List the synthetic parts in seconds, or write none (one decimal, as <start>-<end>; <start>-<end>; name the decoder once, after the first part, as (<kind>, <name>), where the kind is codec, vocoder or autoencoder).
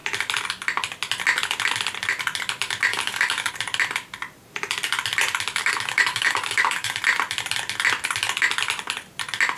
2.9-3.5 (codec, DAC); 5.6-7.0